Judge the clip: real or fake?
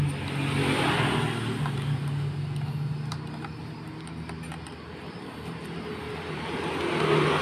real